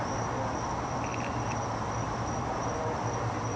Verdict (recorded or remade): recorded